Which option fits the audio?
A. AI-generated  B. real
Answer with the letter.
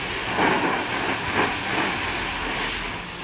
B